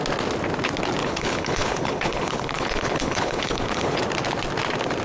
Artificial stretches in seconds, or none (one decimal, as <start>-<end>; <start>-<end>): 1.0-4.0